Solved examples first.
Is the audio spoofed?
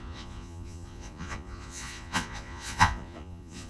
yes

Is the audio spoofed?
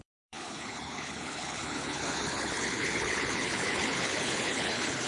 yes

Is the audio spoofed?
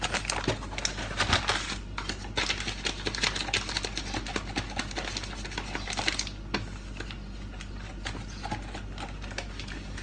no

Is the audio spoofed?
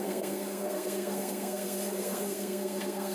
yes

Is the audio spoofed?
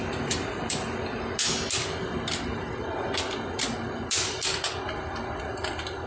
no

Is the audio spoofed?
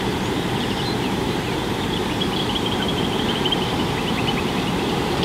yes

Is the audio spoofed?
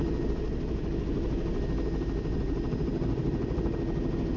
no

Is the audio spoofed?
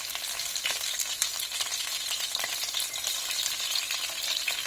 no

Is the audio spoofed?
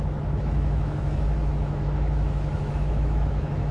yes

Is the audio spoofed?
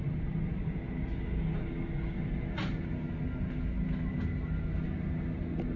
no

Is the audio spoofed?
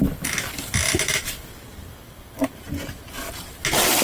no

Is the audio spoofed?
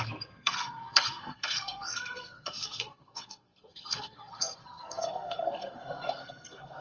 yes